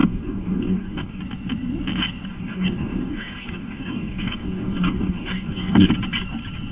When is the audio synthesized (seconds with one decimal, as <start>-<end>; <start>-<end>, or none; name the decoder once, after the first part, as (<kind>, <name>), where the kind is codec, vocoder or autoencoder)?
0.0-1.2 (codec, DAC); 2.3-5.9